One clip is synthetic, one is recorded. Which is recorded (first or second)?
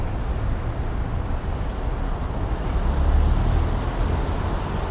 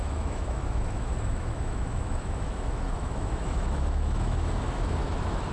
first